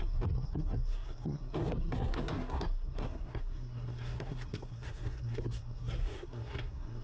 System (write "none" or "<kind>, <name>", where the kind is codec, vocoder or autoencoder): codec, SNAC